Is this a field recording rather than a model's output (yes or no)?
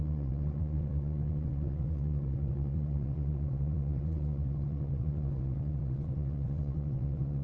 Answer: no